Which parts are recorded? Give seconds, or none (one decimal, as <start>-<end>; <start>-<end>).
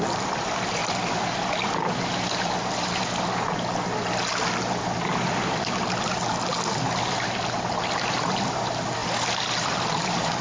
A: 0.8-4.8